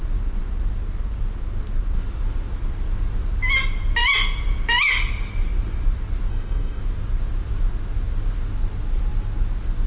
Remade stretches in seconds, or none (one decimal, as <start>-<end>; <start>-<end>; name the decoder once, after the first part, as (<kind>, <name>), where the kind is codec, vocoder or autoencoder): 6.3-6.8 (codec, SNAC)